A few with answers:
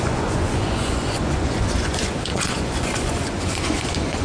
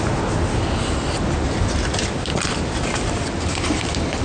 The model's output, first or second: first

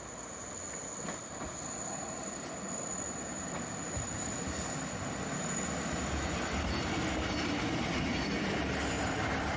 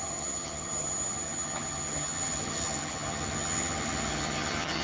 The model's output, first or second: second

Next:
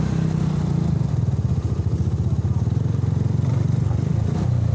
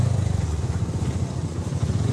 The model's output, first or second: second